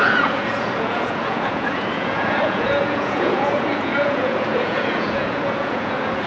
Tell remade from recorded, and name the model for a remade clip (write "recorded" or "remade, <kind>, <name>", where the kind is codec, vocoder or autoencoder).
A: remade, vocoder, Vocos